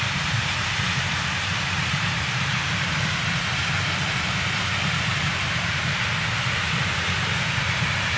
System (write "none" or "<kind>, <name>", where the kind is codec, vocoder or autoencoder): vocoder, BigVGAN v2